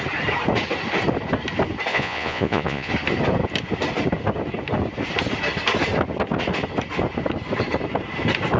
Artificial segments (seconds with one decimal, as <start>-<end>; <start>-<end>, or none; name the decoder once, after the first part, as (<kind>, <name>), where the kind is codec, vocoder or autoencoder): 1.9-2.9 (vocoder, Vocos)